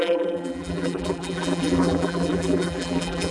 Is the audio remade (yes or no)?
yes